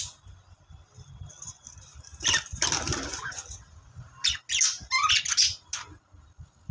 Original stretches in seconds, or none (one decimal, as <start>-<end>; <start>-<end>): 0.0-6.7